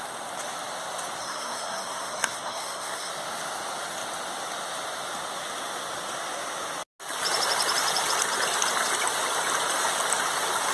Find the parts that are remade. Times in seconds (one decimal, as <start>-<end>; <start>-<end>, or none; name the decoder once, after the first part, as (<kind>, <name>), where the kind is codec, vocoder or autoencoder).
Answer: 1.2-3.1 (codec, SNAC)